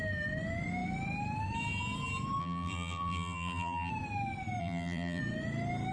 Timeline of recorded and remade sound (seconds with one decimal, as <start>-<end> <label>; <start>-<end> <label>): 0.0-2.4 recorded; 2.4-3.9 remade; 3.9-4.6 recorded; 4.6-5.2 remade; 5.2-5.9 recorded